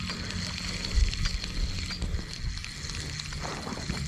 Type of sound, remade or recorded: recorded